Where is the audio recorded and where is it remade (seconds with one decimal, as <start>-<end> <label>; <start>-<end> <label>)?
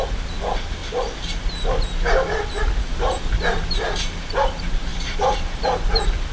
0.0-0.8 remade; 0.8-2.6 recorded; 2.6-6.3 remade